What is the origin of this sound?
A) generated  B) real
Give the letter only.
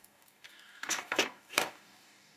A